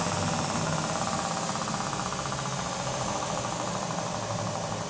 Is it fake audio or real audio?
real